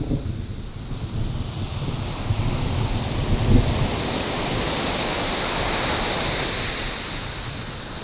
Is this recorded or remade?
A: recorded